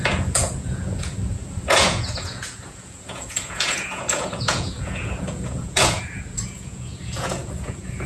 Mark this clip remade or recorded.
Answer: remade